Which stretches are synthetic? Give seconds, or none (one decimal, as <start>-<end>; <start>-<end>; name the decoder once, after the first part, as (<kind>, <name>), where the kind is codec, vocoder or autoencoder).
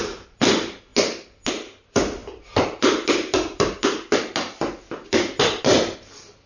none